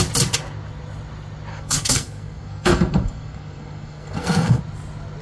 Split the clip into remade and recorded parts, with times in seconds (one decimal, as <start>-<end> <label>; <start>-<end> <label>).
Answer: 0.0-1.5 recorded; 1.5-4.6 remade; 4.6-5.2 recorded